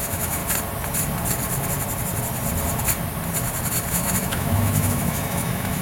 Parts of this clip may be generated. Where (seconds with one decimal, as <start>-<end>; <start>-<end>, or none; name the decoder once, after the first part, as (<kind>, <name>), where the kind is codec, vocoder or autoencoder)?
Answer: 0.0-0.4 (autoencoder, DAC-VAE); 3.9-5.8